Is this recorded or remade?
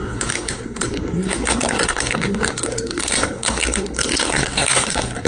remade